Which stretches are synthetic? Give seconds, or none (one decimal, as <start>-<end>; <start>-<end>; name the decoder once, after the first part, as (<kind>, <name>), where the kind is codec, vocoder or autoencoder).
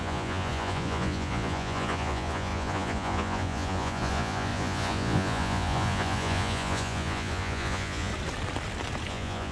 0.0-8.1 (vocoder, Vocos); 9.1-9.5